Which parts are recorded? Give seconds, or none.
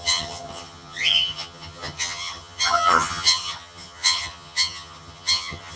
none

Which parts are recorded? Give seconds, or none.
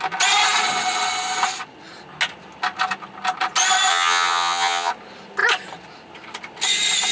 0.0-3.9; 4.9-7.1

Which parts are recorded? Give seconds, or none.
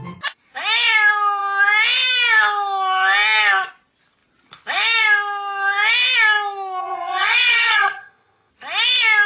0.0-6.8; 8.5-9.3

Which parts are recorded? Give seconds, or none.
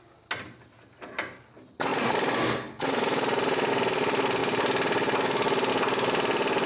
0.0-6.7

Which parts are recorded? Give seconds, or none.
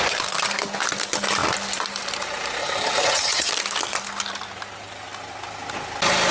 0.0-2.6; 3.5-6.3